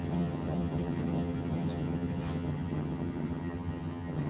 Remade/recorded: remade